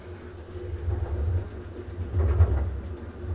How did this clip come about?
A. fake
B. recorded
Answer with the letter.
B